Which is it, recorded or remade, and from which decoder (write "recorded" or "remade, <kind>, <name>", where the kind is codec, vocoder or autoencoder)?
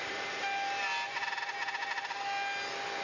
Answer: recorded